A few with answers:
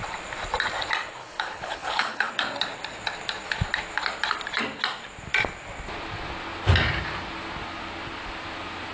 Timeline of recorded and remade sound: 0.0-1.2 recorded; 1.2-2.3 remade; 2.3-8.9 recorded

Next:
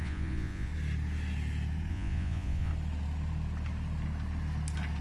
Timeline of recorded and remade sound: 0.0-0.7 remade; 0.7-1.9 recorded; 1.9-2.7 remade; 2.7-5.0 recorded

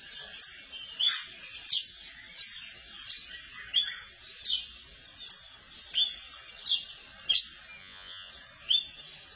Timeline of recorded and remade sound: 0.0-7.8 recorded; 7.8-8.3 remade; 8.3-9.4 recorded